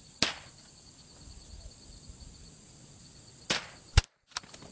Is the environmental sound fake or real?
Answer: real